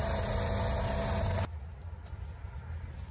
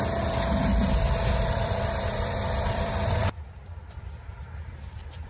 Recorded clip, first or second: first